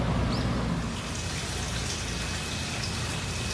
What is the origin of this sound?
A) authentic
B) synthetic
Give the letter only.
A